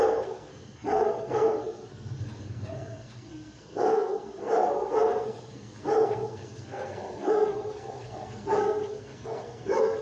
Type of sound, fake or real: fake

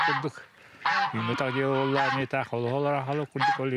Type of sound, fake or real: real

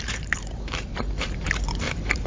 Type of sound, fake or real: fake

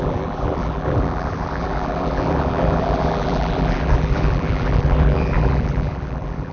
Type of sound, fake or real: fake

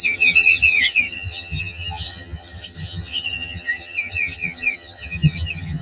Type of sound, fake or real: fake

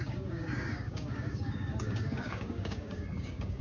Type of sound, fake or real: fake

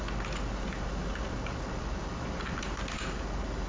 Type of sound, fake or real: real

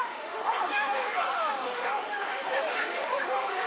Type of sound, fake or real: fake